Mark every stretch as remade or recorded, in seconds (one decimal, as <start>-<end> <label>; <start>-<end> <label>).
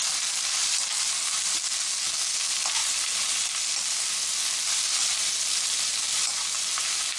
0.0-7.2 recorded